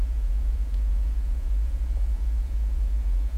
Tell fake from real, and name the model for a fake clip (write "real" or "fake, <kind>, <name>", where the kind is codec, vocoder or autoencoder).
fake, vocoder, Vocos